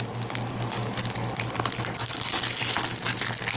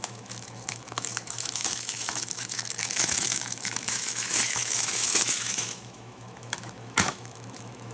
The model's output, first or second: second